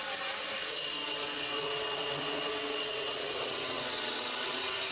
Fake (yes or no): yes